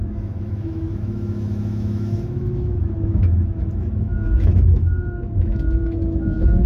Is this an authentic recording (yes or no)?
no